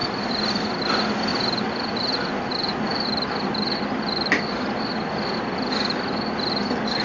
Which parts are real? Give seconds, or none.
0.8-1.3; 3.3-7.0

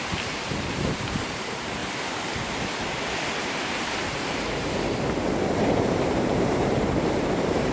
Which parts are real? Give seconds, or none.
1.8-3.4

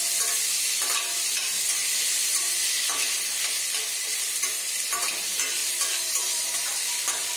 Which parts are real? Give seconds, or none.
0.0-1.8; 5.0-5.6; 6.7-7.4

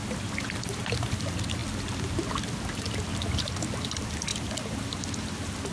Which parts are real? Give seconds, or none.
0.0-4.3

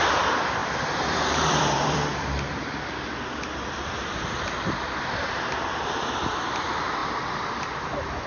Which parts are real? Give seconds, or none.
none

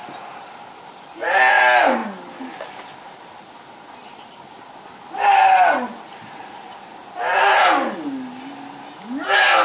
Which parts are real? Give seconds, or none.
0.0-9.6

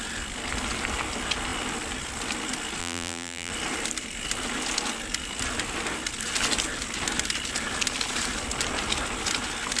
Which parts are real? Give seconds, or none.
0.0-2.8; 3.5-9.8

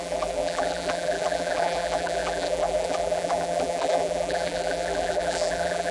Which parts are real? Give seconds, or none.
none